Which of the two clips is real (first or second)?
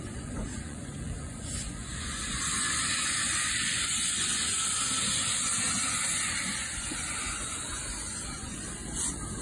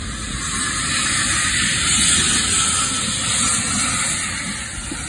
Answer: second